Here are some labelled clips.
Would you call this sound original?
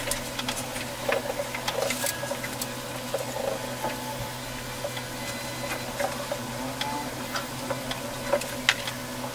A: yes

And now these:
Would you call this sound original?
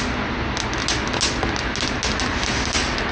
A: yes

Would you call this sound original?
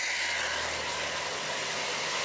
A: yes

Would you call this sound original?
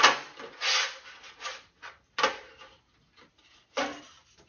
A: yes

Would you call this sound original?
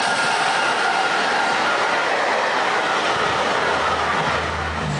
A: yes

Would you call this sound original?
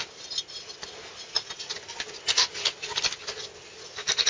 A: yes